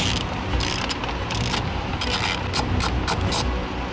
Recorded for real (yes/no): yes